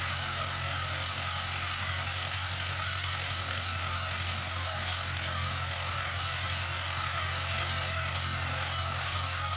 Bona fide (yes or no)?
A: no